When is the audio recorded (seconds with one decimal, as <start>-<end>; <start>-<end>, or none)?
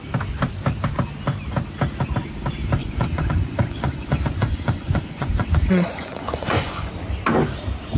0.0-2.8; 6.9-8.0